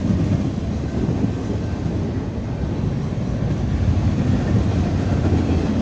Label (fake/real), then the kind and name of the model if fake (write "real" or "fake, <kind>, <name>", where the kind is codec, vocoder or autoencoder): real